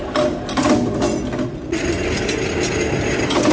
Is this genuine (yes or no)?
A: yes